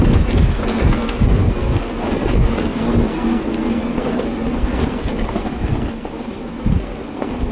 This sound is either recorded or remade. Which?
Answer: remade